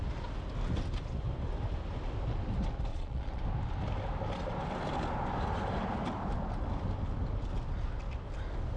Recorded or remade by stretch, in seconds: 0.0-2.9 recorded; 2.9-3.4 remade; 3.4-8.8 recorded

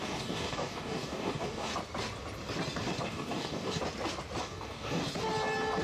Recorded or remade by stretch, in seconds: 0.0-1.7 remade; 1.7-3.0 recorded; 3.0-3.8 remade; 3.8-4.4 recorded; 4.4-5.0 remade; 5.0-5.8 recorded